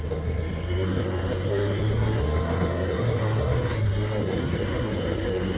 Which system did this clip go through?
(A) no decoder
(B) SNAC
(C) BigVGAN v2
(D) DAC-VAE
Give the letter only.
B